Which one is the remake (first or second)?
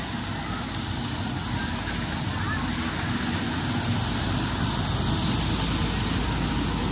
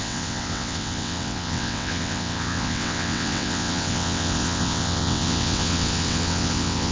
second